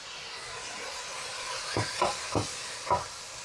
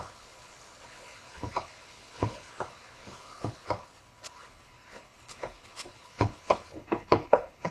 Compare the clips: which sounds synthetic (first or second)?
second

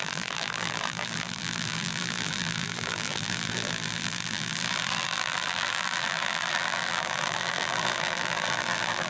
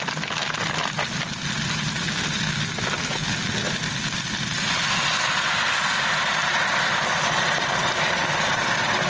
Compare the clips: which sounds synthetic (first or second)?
first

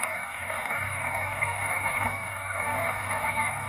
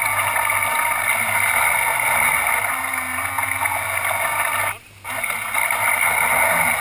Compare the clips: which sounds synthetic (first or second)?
first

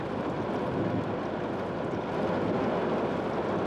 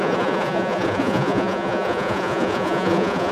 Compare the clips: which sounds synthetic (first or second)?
second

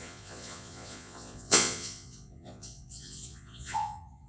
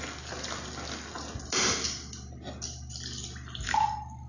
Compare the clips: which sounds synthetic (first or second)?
first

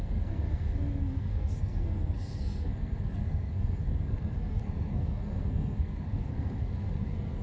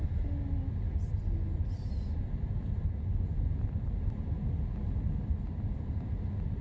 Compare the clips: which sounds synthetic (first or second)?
first